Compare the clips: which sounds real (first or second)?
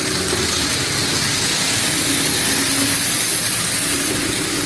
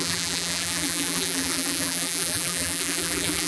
first